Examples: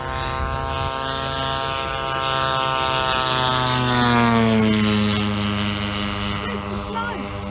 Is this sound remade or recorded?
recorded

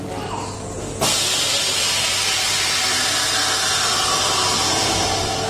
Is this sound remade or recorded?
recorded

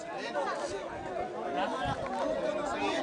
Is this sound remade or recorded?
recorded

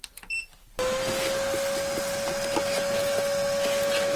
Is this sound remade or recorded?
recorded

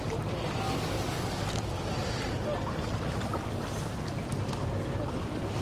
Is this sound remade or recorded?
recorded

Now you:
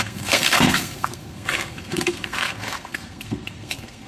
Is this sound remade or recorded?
remade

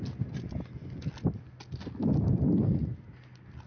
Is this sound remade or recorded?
recorded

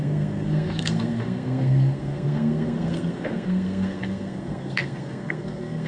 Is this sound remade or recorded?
remade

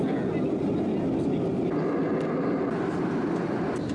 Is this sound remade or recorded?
recorded